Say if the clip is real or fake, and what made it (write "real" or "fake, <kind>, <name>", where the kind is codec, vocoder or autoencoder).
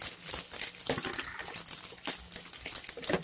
real